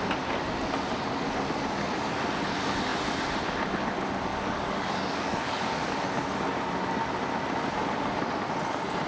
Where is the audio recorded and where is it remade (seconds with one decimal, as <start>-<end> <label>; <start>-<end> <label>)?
0.0-4.3 recorded; 4.3-6.0 remade; 6.0-9.1 recorded